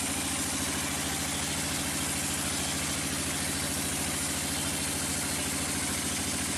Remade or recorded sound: recorded